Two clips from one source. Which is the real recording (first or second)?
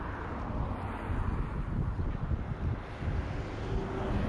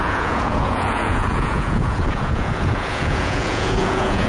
first